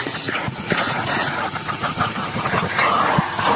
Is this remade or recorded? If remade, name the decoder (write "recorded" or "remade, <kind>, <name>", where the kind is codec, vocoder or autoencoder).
remade, vocoder, Vocos